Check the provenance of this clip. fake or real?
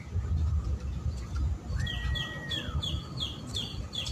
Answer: real